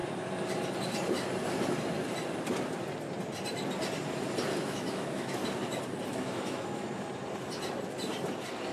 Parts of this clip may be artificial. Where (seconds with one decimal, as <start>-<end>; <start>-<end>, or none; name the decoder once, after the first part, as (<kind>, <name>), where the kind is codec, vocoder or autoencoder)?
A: 4.6-5.4 (autoencoder, DAC-VAE); 6.1-6.9